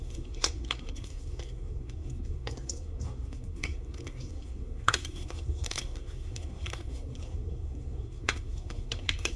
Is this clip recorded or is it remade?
remade